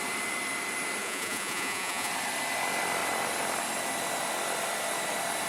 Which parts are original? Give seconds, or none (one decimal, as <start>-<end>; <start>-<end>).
0.0-1.0; 2.1-5.5